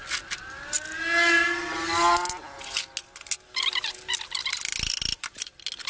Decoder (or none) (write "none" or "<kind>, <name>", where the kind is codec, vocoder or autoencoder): none